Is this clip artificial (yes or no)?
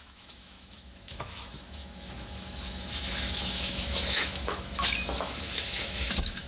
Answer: yes